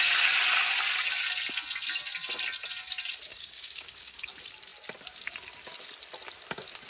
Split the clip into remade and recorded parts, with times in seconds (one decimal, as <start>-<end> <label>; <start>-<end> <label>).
0.0-3.3 recorded; 3.3-4.3 remade; 4.3-6.9 recorded